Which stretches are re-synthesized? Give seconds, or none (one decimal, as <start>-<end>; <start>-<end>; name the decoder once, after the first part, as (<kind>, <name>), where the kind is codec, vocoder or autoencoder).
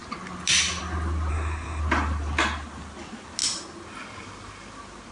1.3-1.8 (codec, SNAC)